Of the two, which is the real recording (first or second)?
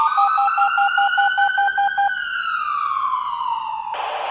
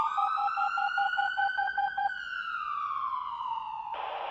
first